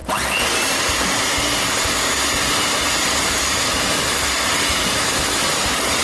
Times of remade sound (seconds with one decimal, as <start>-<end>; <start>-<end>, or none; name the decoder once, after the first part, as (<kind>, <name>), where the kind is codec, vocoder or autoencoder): none